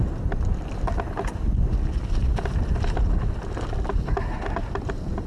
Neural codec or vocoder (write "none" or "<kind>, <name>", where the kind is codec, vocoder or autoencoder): none